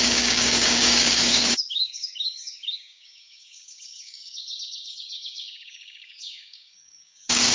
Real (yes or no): no